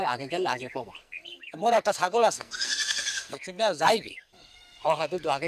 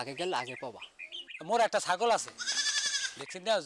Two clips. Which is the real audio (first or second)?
second